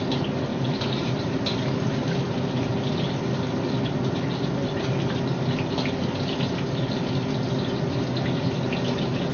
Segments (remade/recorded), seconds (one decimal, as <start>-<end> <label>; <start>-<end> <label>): 0.0-0.5 recorded; 0.5-1.4 remade; 1.4-9.3 recorded